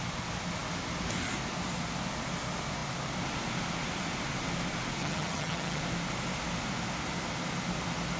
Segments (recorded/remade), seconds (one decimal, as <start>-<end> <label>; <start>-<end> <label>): 0.0-5.0 recorded; 5.0-5.8 remade; 5.8-8.2 recorded